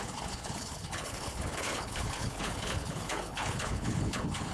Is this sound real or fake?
fake